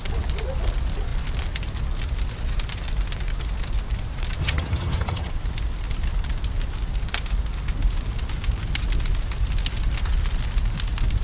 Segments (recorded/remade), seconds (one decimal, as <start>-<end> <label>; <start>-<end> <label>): 0.0-4.4 recorded; 4.4-5.3 remade; 5.3-11.2 recorded